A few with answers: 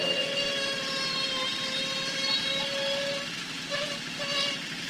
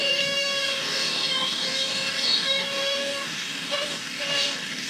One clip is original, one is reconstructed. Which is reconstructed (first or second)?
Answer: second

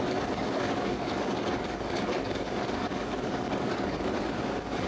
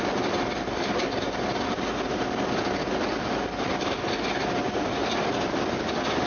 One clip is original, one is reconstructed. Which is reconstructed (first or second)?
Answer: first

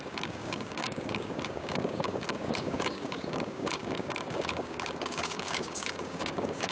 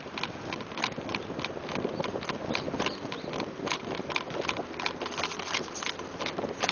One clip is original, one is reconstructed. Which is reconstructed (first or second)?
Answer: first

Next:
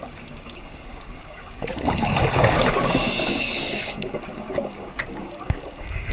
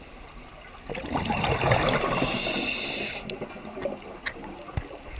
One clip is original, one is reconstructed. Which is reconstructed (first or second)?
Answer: first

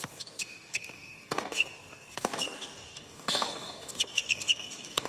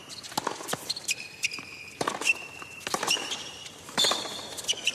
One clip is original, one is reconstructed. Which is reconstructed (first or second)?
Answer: first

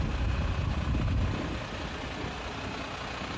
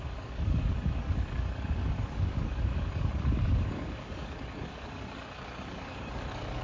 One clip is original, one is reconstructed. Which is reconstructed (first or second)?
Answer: second